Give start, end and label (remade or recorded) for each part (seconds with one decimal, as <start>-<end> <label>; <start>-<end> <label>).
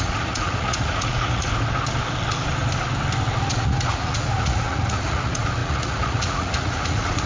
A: 0.0-1.5 remade; 1.5-3.5 recorded; 3.5-7.3 remade